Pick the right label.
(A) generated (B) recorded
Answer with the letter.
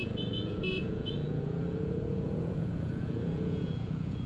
A